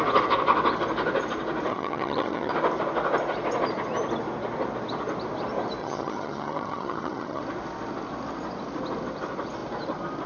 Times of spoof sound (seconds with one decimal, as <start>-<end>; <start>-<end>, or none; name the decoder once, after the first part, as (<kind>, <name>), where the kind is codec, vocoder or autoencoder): 1.7-2.5 (vocoder, HiFi-GAN); 5.8-7.4